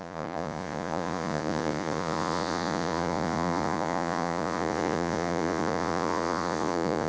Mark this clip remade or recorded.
remade